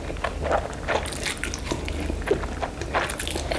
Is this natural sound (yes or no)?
yes